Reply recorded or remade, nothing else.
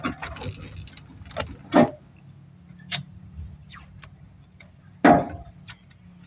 recorded